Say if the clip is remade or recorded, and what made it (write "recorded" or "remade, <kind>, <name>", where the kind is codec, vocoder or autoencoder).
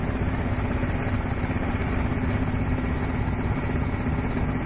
recorded